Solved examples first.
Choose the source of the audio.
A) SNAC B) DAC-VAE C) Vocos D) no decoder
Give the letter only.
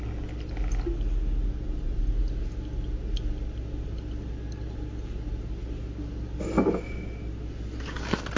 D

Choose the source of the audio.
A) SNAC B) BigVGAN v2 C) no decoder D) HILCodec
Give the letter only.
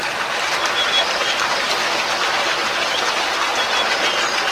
B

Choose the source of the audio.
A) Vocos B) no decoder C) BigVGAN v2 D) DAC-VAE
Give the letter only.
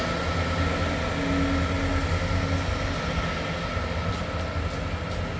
B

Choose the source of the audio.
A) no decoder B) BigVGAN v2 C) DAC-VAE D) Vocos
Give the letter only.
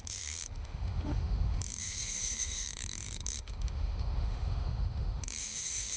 C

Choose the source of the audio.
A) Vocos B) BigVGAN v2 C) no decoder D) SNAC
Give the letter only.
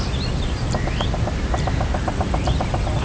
C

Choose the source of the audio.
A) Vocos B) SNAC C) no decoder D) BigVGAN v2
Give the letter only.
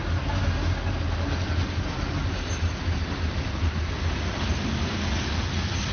C